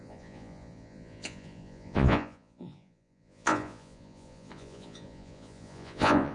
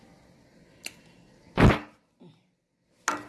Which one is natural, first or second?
second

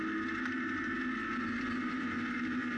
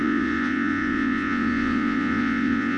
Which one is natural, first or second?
first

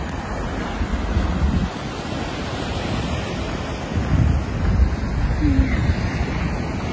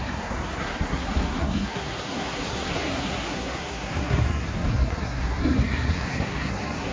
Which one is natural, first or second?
first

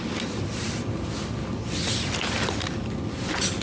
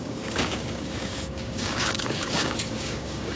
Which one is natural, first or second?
first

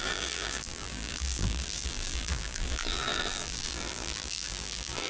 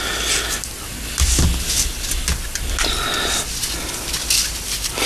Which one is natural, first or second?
second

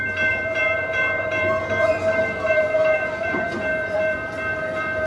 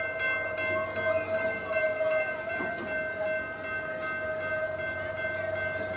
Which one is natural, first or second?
second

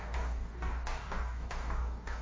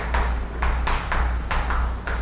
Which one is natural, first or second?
second